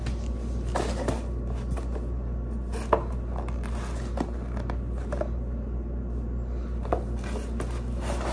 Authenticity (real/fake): real